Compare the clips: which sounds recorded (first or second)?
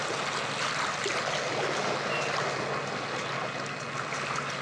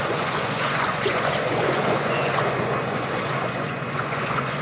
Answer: first